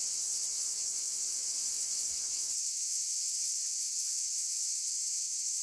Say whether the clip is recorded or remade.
remade